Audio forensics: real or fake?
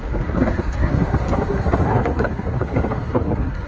fake